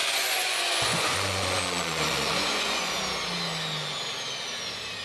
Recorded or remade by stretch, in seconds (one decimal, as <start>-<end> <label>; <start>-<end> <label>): 0.0-3.0 remade; 3.0-5.0 recorded